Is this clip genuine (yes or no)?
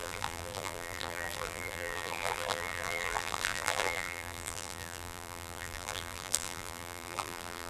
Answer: no